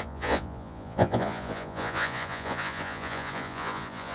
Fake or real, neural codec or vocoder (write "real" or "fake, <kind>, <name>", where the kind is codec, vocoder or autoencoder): fake, vocoder, Vocos